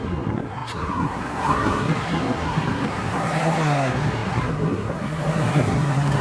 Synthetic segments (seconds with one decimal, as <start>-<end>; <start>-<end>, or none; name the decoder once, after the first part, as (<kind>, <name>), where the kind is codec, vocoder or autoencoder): 0.0-6.2 (codec, SNAC)